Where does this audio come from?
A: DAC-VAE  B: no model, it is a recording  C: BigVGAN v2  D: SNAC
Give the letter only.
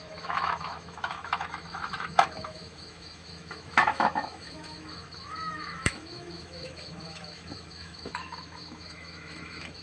A